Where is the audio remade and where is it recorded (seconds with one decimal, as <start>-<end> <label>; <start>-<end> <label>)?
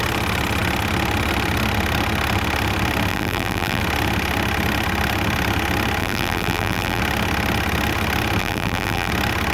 0.0-3.1 recorded; 3.1-3.8 remade; 3.8-6.0 recorded; 6.0-7.0 remade; 7.0-8.4 recorded; 8.4-9.1 remade; 9.1-9.5 recorded